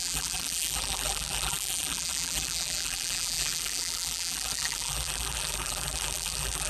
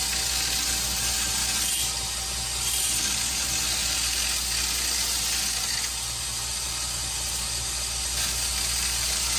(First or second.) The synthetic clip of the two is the first